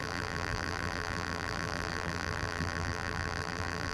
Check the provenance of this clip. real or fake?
fake